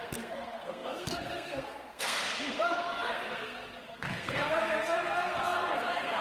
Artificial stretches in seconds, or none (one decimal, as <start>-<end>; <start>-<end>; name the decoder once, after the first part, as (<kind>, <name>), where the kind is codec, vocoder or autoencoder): 0.0-6.2 (codec, SNAC)

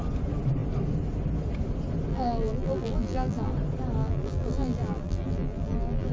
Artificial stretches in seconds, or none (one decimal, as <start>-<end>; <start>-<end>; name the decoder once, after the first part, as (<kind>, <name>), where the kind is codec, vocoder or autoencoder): 2.1-3.5 (vocoder, BigVGAN v2); 4.0-6.1

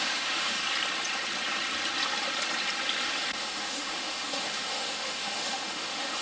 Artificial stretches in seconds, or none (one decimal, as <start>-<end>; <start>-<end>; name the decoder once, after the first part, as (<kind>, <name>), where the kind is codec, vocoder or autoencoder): 0.0-0.6 (autoencoder, DAC-VAE); 3.1-6.2

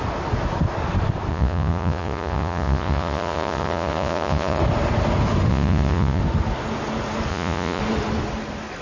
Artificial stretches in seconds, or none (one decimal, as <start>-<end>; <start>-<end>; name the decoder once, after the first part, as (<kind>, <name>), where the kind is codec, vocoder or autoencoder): 1.3-4.6 (vocoder, Vocos); 5.5-6.2; 7.3-7.8

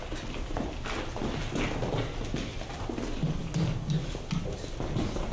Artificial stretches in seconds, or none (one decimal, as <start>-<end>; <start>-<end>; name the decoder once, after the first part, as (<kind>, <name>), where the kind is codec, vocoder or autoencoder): 3.4-4.1 (codec, DAC)